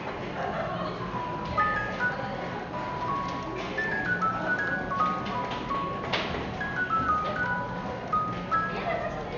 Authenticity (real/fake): real